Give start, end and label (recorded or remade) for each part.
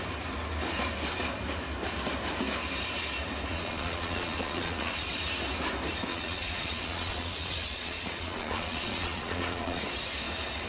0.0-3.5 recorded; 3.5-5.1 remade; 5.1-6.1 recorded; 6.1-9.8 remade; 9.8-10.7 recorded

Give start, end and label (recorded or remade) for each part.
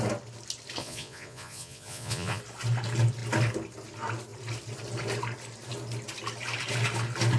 0.0-0.8 recorded; 0.8-2.4 remade; 2.4-7.4 recorded